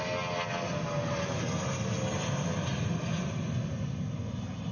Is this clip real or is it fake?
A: real